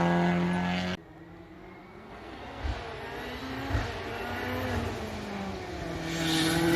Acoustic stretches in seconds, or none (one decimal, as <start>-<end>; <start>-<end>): 0.0-1.8; 2.6-6.8